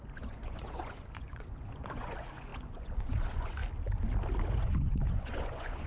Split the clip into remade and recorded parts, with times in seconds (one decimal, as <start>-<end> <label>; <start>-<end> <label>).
0.0-3.6 remade; 3.6-4.5 recorded; 4.5-5.9 remade